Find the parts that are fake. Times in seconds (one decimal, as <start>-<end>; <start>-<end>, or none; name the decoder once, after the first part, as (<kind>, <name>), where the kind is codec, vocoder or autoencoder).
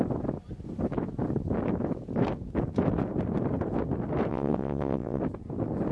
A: 4.3-5.2 (vocoder, WaveNeXt)